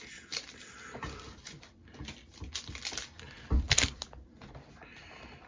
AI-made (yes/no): no